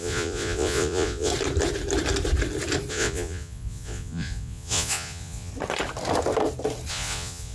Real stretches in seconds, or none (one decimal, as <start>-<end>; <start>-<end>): 1.3-2.9; 5.5-6.9